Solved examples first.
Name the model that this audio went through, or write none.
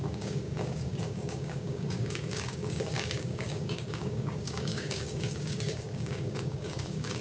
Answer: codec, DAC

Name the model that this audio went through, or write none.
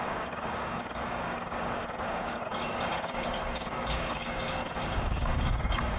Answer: codec, DAC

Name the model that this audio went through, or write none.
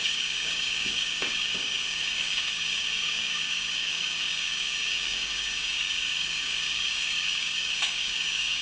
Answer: codec, DAC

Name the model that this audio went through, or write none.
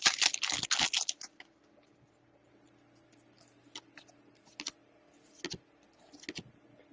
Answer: none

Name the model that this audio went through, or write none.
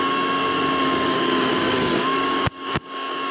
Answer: codec, DAC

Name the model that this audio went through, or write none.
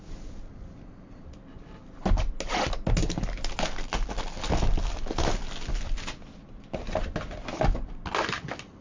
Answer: none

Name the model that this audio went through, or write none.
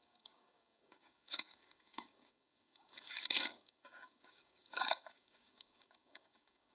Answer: codec, DAC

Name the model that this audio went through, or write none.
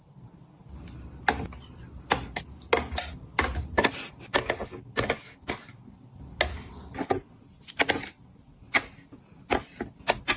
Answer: none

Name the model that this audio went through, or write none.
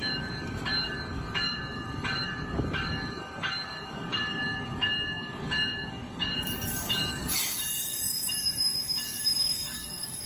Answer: codec, DAC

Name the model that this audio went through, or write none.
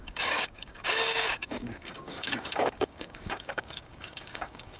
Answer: codec, DAC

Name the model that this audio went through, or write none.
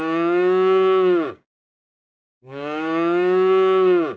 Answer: codec, DAC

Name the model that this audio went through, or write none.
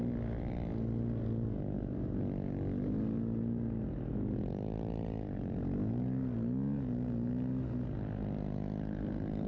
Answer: none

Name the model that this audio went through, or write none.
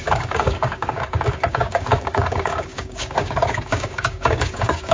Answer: codec, DAC